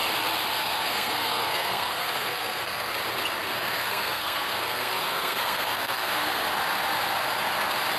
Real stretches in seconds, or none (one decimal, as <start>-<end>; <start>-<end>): 0.0-0.6; 2.9-3.5; 6.5-8.0